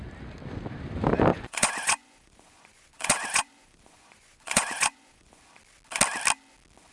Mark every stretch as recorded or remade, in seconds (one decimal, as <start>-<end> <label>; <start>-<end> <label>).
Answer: 0.0-1.3 recorded; 1.3-5.4 remade; 5.4-6.9 recorded